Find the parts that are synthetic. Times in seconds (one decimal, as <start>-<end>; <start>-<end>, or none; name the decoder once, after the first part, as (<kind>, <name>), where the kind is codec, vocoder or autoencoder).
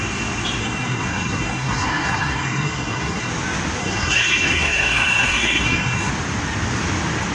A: 0.6-3.3 (codec, SNAC); 3.8-6.1